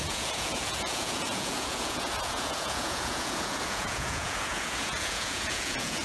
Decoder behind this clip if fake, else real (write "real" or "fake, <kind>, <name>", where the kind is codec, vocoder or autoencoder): fake, vocoder, Vocos